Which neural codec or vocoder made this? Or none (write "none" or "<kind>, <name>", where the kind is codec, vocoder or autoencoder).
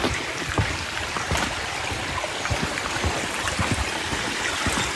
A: vocoder, BigVGAN v2